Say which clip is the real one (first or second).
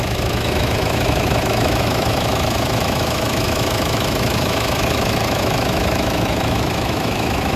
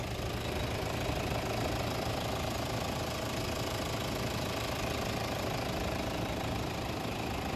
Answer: second